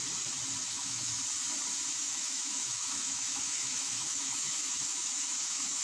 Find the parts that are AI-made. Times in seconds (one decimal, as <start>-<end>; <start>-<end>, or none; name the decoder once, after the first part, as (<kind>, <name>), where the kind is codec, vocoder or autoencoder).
0.6-1.1 (autoencoder, DAC-VAE); 2.0-5.8